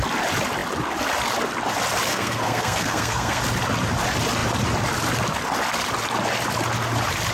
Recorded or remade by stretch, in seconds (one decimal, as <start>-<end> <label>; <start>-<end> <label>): 0.0-2.1 recorded; 2.1-3.4 remade; 3.4-7.3 recorded